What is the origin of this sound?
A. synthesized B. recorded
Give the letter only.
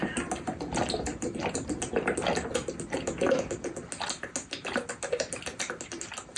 B